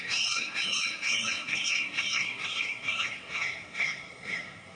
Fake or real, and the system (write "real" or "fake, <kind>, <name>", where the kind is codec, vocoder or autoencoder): fake, codec, SNAC